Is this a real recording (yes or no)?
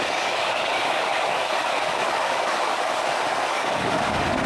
no